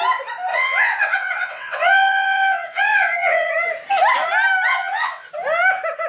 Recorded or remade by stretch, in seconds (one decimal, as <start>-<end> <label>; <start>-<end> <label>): 0.0-0.5 recorded; 0.5-3.5 remade; 3.5-4.7 recorded; 4.7-5.3 remade; 5.3-6.1 recorded